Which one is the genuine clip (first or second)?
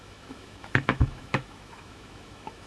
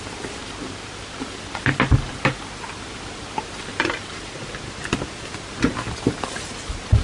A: second